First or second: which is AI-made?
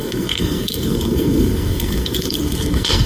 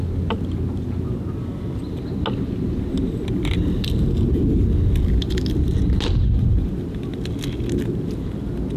first